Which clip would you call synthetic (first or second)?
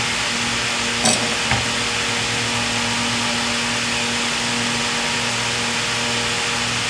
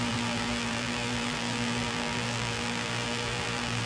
second